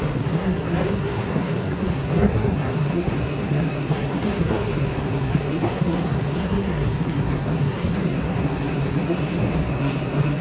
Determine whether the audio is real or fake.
fake